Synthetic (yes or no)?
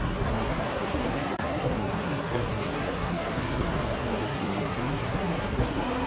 yes